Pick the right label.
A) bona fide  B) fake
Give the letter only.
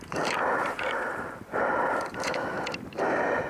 B